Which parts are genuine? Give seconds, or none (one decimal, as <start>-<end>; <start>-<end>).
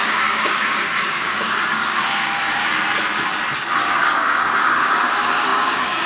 2.7-3.8